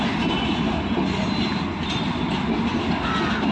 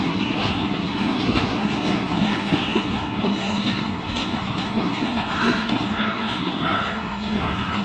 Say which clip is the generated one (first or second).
second